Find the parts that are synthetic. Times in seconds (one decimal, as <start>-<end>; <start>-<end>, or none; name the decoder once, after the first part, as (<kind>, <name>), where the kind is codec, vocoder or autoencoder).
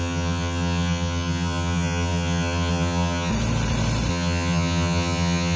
0.0-3.3 (vocoder, HiFi-GAN); 4.1-5.6